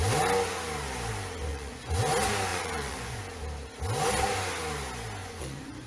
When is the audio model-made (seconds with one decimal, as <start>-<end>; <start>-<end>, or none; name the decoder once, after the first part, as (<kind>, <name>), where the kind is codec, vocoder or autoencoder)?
1.5-2.0 (vocoder, Vocos); 2.5-3.2; 5.2-5.9